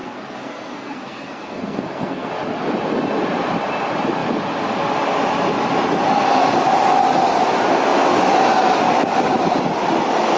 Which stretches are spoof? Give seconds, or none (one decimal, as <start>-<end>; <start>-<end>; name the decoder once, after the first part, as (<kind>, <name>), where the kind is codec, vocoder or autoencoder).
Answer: 0.0-2.3 (codec, SNAC)